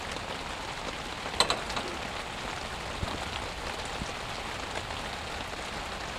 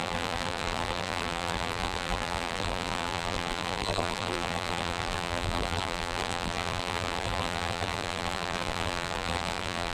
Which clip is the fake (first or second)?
second